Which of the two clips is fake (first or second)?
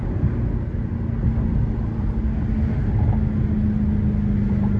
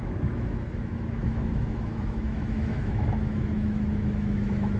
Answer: second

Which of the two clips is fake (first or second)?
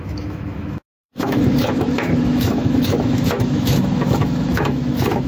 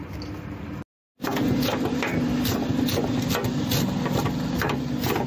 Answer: first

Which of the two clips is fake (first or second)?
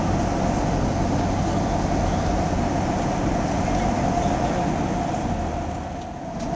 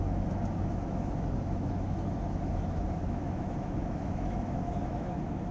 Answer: second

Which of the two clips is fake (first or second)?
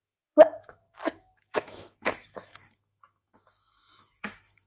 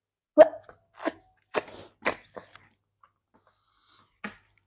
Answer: first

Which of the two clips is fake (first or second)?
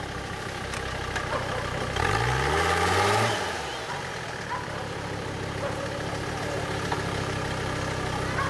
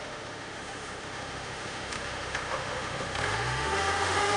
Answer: second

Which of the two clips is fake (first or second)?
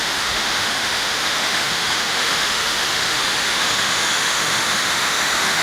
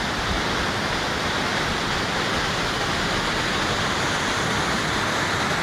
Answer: first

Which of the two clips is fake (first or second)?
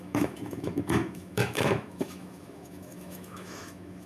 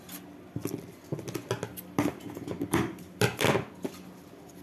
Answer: first